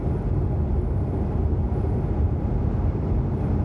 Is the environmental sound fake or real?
real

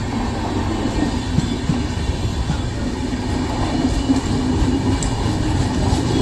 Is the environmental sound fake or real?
real